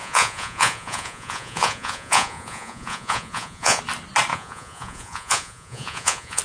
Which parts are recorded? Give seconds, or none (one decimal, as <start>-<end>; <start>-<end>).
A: 3.8-4.3